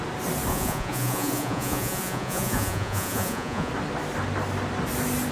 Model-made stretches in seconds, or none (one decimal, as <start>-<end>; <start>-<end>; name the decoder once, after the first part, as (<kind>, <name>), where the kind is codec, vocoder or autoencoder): 0.5-3.7 (vocoder, Vocos)